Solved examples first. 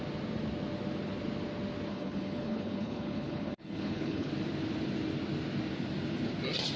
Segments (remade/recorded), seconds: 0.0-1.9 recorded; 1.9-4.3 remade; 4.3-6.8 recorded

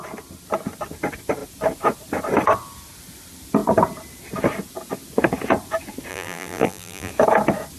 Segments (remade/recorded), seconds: 0.0-6.1 recorded; 6.1-7.1 remade; 7.1-7.8 recorded

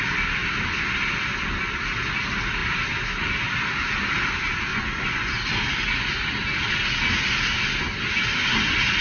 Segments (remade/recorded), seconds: 0.0-4.7 recorded; 4.7-5.3 remade; 5.3-9.0 recorded

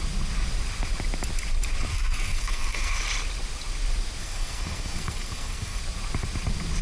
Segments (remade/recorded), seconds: 0.0-1.9 recorded; 1.9-3.0 remade; 3.0-4.2 recorded; 4.2-5.8 remade; 5.8-6.8 recorded

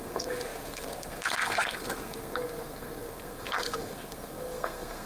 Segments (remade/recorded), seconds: 0.0-5.1 remade

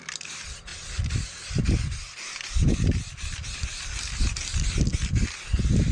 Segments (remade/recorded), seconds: 0.0-5.9 recorded